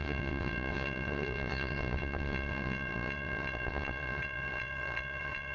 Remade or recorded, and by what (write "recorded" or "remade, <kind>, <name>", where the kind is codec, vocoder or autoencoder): remade, vocoder, WaveNeXt